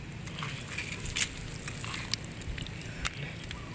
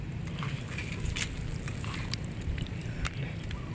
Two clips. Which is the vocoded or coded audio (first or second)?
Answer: second